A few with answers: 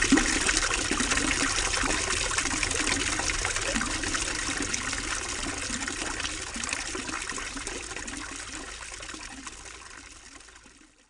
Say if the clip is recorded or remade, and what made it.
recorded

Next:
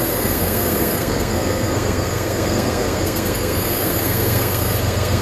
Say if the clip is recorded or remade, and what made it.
remade, codec, SNAC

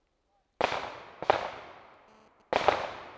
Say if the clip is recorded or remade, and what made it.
recorded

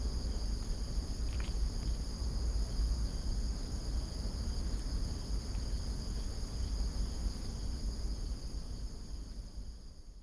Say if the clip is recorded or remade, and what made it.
recorded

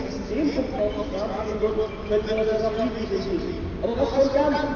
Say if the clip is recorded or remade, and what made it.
recorded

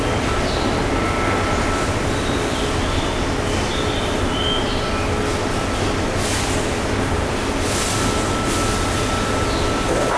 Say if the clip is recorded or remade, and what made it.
recorded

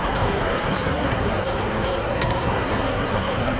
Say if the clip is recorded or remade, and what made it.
remade, codec, SNAC